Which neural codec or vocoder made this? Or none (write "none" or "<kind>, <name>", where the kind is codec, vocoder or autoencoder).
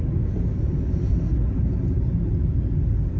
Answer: none